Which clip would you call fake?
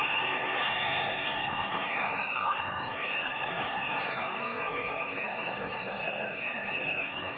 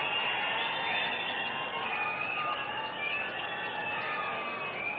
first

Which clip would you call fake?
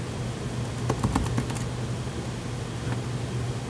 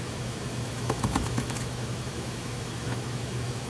second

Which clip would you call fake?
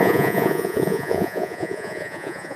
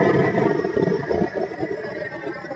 first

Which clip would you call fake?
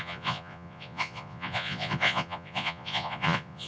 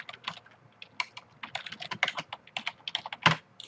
first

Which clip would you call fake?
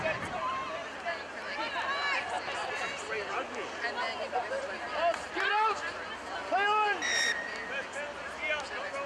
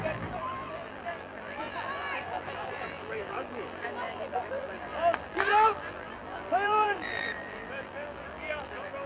second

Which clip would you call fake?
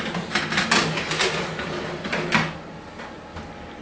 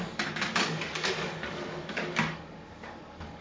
second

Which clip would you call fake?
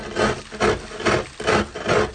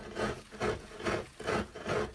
second